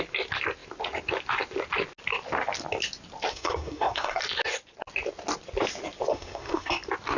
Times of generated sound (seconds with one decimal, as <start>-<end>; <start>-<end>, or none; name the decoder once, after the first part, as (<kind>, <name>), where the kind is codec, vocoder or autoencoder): 3.3-4.2 (codec, SNAC); 6.1-6.7

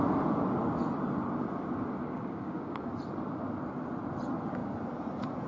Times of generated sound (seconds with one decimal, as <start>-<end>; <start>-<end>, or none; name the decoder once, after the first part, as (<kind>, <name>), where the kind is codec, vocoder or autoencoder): 2.1-2.9 (codec, DAC)

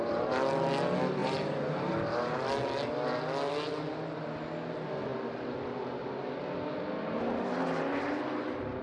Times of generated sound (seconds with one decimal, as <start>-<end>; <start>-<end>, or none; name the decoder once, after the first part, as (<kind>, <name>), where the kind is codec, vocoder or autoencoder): 1.2-1.9 (vocoder, BigVGAN v2)

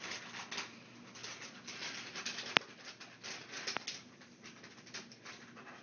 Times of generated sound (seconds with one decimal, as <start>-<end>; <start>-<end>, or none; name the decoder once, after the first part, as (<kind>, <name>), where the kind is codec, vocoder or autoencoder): none

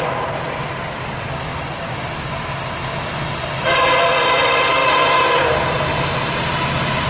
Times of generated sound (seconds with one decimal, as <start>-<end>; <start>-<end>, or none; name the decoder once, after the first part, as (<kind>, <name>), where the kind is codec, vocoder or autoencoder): none